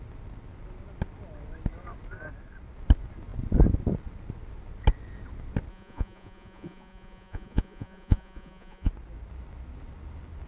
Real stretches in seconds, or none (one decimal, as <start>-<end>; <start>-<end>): 0.0-5.7; 8.9-10.5